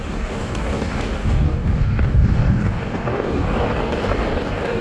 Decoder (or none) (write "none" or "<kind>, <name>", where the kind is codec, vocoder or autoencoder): codec, DAC